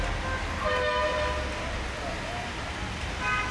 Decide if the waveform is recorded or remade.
recorded